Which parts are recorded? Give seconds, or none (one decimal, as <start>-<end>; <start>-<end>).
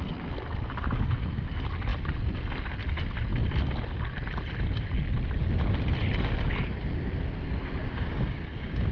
0.0-7.8